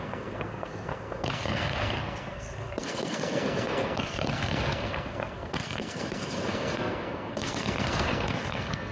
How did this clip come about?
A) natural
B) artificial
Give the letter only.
B